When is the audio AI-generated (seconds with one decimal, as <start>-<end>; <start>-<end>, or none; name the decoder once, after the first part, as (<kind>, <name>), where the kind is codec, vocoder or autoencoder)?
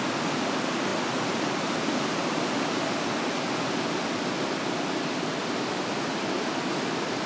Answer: none